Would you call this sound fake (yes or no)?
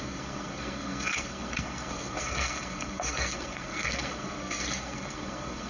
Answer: yes